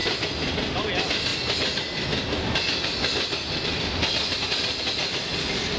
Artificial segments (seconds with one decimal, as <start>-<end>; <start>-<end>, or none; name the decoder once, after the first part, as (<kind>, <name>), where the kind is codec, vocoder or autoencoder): none